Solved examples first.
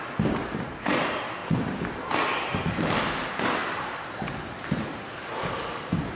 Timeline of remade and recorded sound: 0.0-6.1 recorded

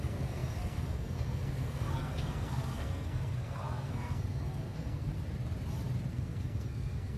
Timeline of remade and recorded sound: 0.0-5.1 remade; 5.1-6.1 recorded; 6.1-7.2 remade

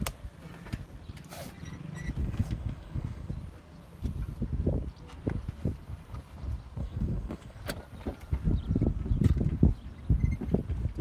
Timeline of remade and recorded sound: 0.0-2.2 recorded; 2.2-3.3 remade; 3.3-6.8 recorded; 6.8-7.6 remade; 7.6-11.0 recorded